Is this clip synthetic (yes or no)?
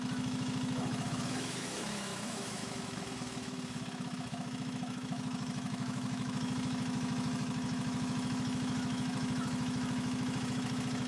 yes